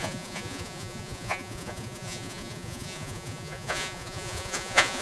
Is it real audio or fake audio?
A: fake